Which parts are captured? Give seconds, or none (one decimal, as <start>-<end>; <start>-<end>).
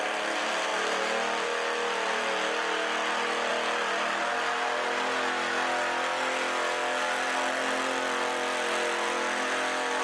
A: 0.0-10.0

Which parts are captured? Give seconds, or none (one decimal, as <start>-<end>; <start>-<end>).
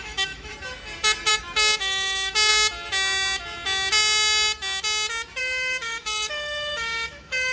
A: 0.5-1.3; 2.5-5.4